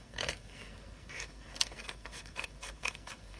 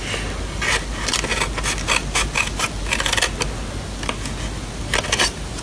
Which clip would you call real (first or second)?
second